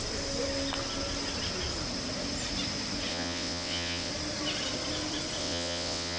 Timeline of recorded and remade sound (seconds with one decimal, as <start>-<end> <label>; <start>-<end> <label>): 0.0-3.1 recorded; 3.1-4.1 remade; 4.1-5.4 recorded; 5.4-6.2 remade